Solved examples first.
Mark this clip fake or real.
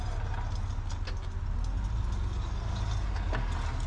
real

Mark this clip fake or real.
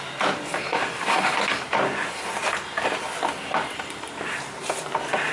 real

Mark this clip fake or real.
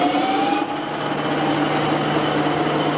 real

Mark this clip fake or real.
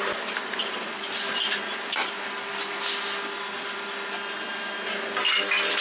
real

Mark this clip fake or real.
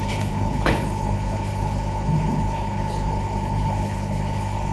fake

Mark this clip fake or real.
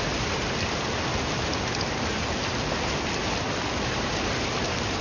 real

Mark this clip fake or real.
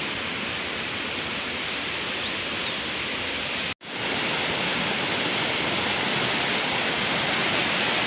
real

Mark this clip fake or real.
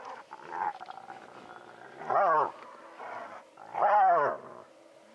real